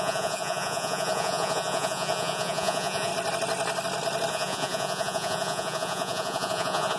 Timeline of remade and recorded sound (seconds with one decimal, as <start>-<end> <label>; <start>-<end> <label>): 0.0-3.1 remade; 3.1-4.3 recorded; 4.3-7.0 remade